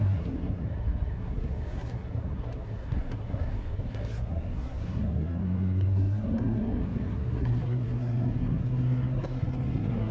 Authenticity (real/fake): fake